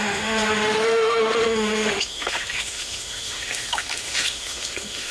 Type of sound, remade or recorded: remade